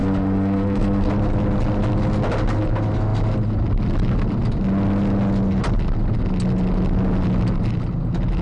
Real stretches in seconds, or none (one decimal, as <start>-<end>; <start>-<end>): 1.1-8.4